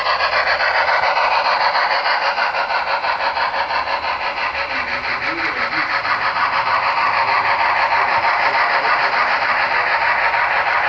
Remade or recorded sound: recorded